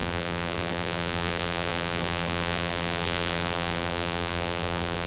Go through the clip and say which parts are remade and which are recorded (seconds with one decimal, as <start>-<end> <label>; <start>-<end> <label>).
0.0-5.1 remade